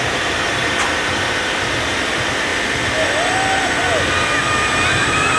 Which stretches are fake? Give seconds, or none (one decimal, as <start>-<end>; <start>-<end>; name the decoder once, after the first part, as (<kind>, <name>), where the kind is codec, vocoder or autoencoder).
0.0-2.5 (vocoder, BigVGAN v2)